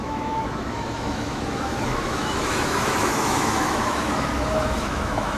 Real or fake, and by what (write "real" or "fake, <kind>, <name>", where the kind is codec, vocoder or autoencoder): fake, autoencoder, DAC-VAE